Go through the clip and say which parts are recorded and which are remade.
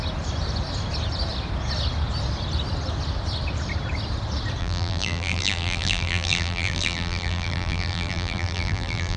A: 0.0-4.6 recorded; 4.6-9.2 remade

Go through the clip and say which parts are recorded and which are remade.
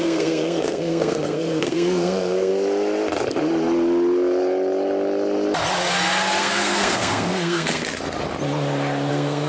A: 0.0-2.5 remade; 2.5-6.4 recorded; 6.4-7.8 remade; 7.8-9.1 recorded; 9.1-9.5 remade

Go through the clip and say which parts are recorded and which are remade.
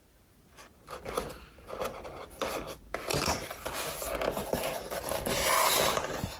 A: 0.0-4.5 recorded; 4.5-5.6 remade; 5.6-6.4 recorded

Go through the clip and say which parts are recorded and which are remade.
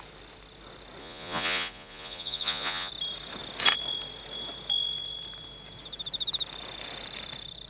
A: 0.0-1.0 recorded; 1.0-2.9 remade; 2.9-7.7 recorded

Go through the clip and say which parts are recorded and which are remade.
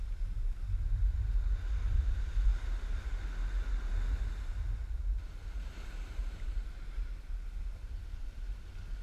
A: 0.0-9.0 recorded